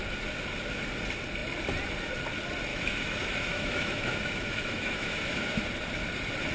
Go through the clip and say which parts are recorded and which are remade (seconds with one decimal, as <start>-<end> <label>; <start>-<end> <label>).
0.0-2.7 recorded; 2.7-5.6 remade; 5.6-6.5 recorded